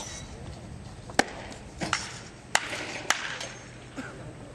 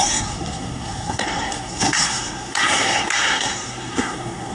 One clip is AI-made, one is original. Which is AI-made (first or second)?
second